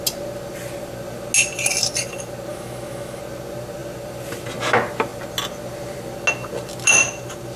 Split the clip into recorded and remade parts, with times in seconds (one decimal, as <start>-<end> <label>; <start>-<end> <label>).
0.0-2.5 recorded; 2.5-3.2 remade; 3.2-7.6 recorded